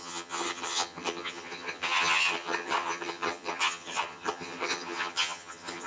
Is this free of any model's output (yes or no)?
no